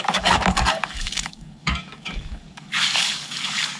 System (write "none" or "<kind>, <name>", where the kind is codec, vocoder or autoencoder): codec, DAC